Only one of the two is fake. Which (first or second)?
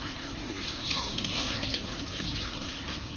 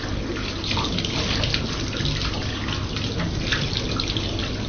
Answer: first